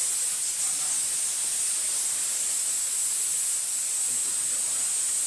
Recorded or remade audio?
recorded